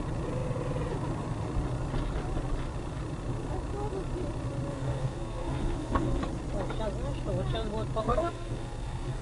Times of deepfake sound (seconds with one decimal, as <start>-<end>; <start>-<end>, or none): 4.7-6.2; 8.0-9.2